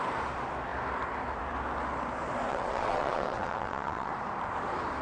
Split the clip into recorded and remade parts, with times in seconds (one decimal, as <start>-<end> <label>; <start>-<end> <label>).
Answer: 0.0-2.5 recorded; 2.5-4.1 remade; 4.1-5.0 recorded